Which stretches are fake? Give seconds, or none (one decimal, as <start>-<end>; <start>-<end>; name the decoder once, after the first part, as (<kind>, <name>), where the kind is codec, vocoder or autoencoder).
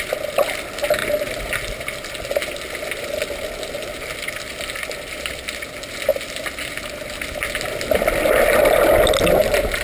none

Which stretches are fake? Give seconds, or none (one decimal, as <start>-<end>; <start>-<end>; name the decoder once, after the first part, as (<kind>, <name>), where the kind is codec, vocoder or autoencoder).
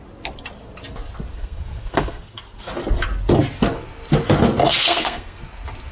1.3-2.7 (codec, SNAC); 4.6-5.4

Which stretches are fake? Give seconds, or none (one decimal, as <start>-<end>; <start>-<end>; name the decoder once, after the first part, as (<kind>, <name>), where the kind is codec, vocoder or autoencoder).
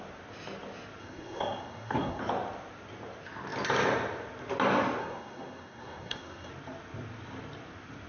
1.0-2.2 (codec, SNAC); 5.0-6.5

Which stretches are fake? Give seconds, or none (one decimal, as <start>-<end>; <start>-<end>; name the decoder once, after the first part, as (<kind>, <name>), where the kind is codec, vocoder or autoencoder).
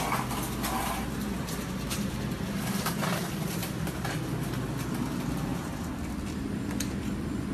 1.4-2.1 (vocoder, BigVGAN v2); 3.6-4.2; 5.5-6.1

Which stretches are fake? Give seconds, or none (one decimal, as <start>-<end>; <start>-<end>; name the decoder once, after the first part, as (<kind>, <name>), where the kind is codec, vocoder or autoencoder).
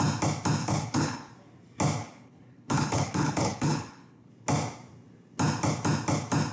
0.6-1.3 (codec, HILCodec); 2.0-4.3